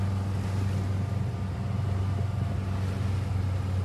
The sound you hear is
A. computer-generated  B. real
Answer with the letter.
B